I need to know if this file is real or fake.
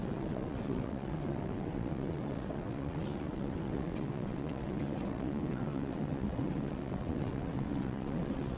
fake